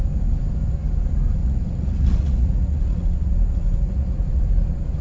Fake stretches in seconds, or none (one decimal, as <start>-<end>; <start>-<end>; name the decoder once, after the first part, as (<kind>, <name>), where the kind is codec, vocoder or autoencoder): 1.4-4.4 (vocoder, Vocos)